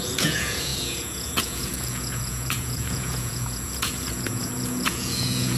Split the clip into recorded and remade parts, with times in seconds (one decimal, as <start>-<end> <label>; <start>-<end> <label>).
0.0-5.6 remade